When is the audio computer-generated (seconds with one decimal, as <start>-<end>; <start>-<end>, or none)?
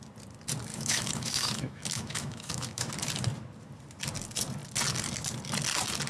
0.7-2.9